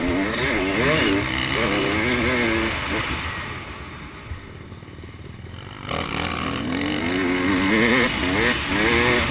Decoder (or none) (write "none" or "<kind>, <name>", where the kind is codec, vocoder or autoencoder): none